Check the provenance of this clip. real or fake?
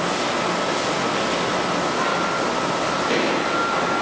real